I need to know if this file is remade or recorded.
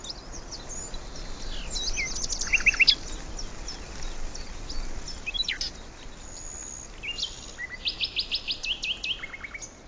recorded